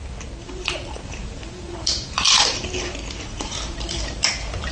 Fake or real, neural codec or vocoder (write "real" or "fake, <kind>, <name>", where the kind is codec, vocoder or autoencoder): fake, vocoder, BigVGAN v2